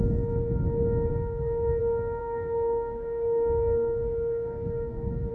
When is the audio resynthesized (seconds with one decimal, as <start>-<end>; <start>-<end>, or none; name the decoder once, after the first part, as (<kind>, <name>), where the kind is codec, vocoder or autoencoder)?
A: 1.1-1.8 (codec, SNAC); 2.2-5.3